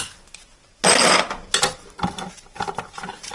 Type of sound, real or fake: real